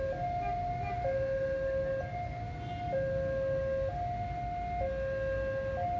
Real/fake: real